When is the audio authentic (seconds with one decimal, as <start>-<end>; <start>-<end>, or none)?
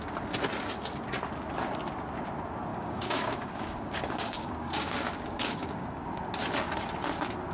0.0-2.7; 6.0-7.5